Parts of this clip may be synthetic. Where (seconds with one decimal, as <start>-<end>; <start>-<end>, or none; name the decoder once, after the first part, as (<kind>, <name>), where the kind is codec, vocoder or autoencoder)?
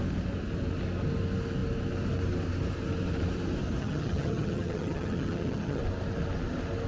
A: 3.8-5.8 (vocoder, HiFi-GAN)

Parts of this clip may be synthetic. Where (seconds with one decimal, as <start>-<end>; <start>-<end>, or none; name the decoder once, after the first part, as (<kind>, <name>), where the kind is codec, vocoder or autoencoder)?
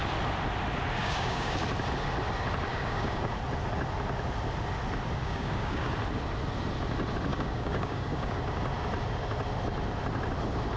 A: 1.0-1.6 (codec, DAC); 2.7-3.4; 5.2-5.9; 7.3-8.4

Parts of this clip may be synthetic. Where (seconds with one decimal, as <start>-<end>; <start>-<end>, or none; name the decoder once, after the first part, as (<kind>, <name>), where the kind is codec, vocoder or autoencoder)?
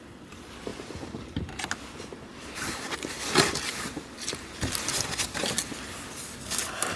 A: 0.7-1.4 (vocoder, BigVGAN v2); 2.3-4.9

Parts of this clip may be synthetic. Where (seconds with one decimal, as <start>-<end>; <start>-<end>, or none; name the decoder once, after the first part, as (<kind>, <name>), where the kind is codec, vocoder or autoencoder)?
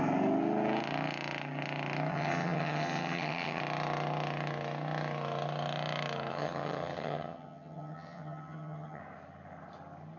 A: 2.1-3.6 (vocoder, HiFi-GAN); 6.3-9.0